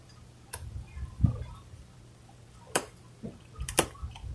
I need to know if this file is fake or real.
fake